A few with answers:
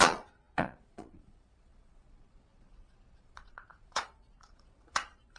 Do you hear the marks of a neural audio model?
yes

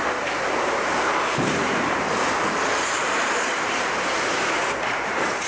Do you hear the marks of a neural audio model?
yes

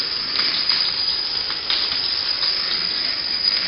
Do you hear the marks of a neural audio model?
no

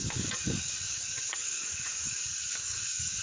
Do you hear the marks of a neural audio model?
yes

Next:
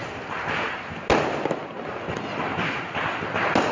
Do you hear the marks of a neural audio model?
no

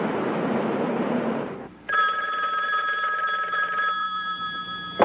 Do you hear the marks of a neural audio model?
yes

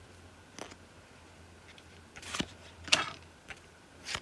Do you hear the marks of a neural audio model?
no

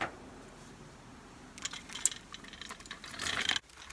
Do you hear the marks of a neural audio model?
no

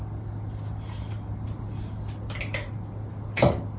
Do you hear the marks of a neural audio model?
no